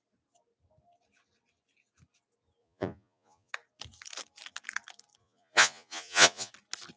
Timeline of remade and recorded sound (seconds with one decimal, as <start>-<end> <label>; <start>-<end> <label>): 0.0-2.6 recorded; 2.6-3.5 remade; 3.5-5.2 recorded; 5.2-6.5 remade; 6.5-7.0 recorded